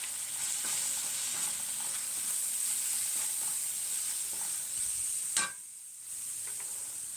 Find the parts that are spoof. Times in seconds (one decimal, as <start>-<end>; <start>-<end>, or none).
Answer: 6.3-7.2